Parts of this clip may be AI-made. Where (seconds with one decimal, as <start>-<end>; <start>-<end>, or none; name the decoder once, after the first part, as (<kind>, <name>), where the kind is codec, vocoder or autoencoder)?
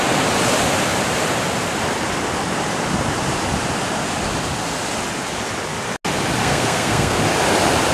6.4-7.2 (codec, SNAC)